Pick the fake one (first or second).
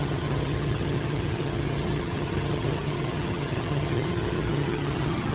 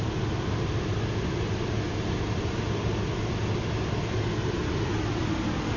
first